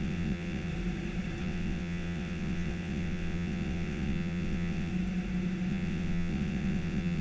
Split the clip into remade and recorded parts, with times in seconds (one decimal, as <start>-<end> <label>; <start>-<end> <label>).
0.0-0.7 remade; 0.7-1.4 recorded; 1.4-4.9 remade; 4.9-5.7 recorded; 5.7-7.2 remade